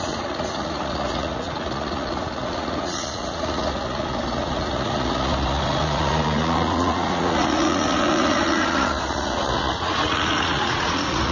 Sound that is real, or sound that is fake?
fake